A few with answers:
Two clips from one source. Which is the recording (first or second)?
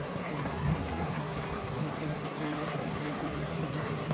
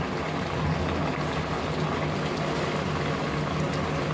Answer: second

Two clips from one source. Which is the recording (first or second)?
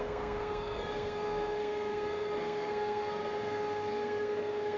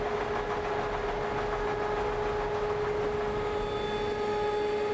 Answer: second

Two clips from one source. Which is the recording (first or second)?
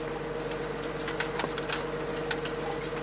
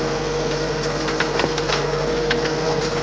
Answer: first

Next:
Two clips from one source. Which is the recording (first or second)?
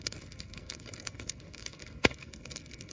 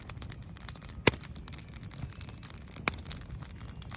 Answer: second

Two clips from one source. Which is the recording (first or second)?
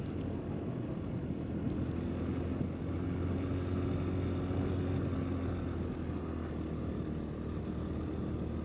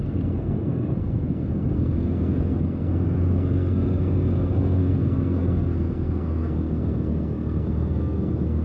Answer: first